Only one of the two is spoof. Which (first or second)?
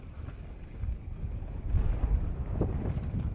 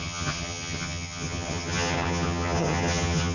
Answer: second